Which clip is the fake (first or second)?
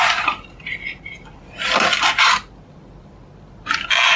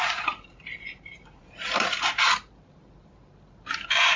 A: second